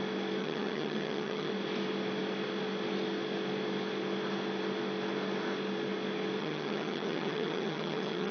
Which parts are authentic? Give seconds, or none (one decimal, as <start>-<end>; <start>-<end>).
0.0-0.4; 1.5-6.4